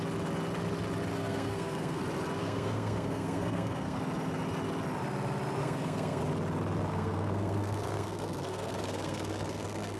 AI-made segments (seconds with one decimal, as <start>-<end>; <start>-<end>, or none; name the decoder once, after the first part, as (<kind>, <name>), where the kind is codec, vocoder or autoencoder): 1.1-2.0 (codec, SNAC); 2.4-4.0; 5.6-6.2; 6.9-10.0